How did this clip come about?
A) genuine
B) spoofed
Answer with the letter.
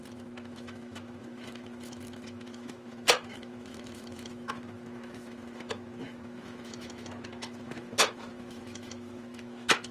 B